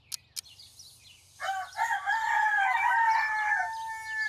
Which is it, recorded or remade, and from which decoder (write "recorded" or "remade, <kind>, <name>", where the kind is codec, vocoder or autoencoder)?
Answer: recorded